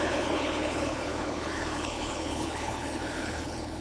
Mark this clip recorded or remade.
remade